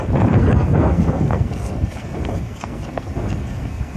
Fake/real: fake